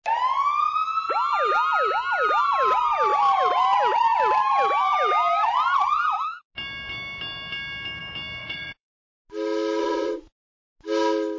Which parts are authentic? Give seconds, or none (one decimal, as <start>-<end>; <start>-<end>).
0.0-8.4; 9.0-9.8; 10.3-11.4